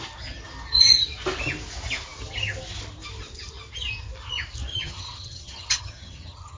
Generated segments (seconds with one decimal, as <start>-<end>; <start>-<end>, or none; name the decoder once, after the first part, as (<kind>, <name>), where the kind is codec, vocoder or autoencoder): 4.7-6.6 (vocoder, HiFi-GAN)